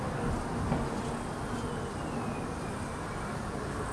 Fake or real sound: real